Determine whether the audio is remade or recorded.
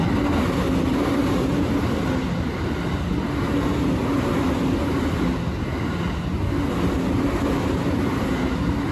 recorded